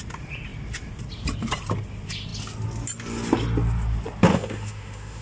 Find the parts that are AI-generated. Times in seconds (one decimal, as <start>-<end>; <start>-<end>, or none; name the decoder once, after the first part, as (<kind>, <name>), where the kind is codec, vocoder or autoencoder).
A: 4.3-5.2 (autoencoder, DAC-VAE)